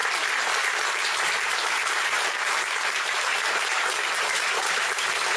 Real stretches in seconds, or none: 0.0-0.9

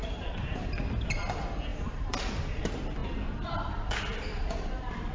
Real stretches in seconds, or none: 0.0-1.7; 2.6-3.0

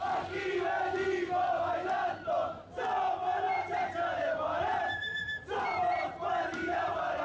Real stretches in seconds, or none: 0.0-1.4; 2.3-3.5

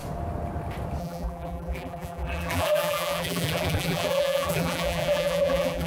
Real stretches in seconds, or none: 0.0-1.0

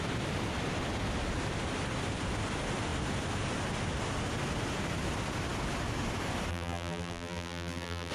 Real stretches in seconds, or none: 0.0-6.5

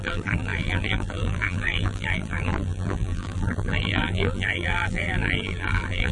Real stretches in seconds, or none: none

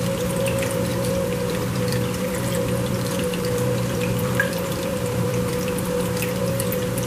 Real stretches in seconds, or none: none

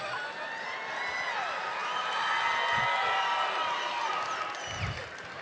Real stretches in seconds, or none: 0.0-5.4